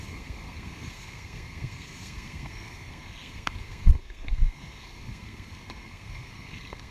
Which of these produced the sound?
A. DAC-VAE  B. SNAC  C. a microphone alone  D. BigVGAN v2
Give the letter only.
B